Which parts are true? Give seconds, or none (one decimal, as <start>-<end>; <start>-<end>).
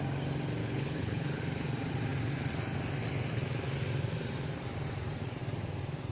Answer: 0.0-0.6; 1.4-6.1